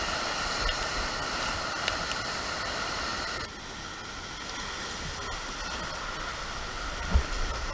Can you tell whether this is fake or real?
real